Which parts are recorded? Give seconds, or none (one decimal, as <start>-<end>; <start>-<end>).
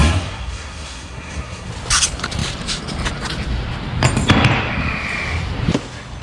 1.7-6.2